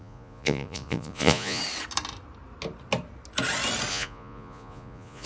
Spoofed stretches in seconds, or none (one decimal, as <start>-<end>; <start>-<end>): 0.0-1.6; 3.9-5.3